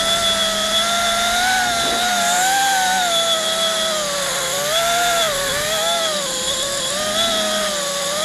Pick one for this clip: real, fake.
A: real